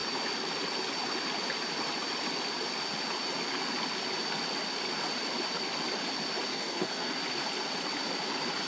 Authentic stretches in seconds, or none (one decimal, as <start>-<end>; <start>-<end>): 0.0-6.5; 7.1-8.7